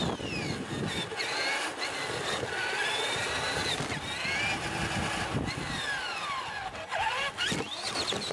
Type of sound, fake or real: real